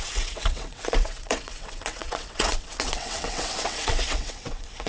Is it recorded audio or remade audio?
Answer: remade